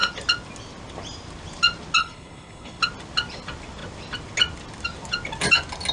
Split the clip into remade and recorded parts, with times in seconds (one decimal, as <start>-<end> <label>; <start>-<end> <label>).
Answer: 0.0-2.0 recorded; 2.0-2.8 remade; 2.8-5.9 recorded